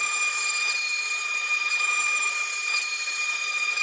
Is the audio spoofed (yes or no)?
yes